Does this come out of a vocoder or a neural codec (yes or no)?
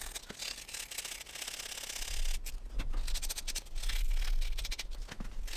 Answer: no